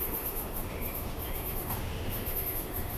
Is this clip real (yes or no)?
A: no